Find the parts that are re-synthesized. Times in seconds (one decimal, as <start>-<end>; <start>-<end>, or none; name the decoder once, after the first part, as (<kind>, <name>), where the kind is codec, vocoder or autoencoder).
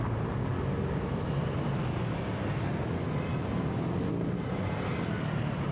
none